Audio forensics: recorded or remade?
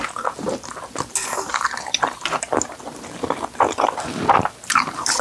recorded